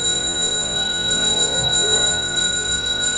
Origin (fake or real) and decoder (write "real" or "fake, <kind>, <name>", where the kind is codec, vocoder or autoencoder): fake, vocoder, WaveNeXt